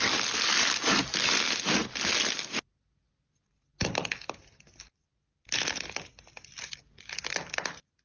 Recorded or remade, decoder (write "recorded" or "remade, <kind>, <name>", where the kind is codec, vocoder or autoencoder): recorded